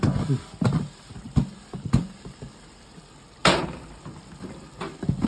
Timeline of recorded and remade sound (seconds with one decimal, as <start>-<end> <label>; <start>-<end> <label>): 0.0-5.3 recorded